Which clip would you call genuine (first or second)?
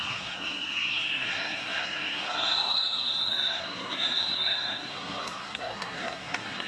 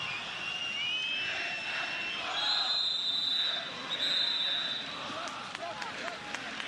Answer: second